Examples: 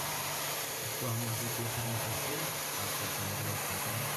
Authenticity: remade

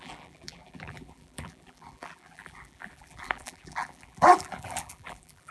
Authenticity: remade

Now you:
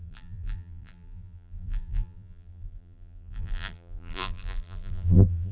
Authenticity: remade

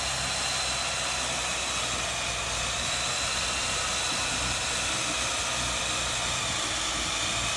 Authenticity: recorded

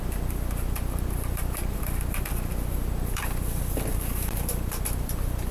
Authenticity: remade